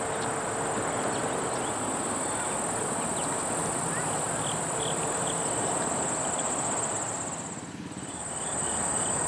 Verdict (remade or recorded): recorded